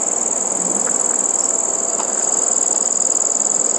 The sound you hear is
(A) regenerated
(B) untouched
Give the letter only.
B